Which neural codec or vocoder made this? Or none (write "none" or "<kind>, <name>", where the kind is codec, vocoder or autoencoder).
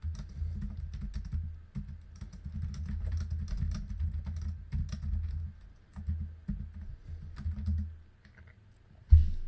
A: none